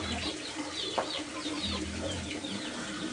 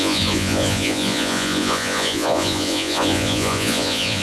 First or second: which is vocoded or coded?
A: second